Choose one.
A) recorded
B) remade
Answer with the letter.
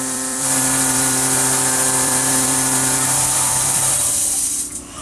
B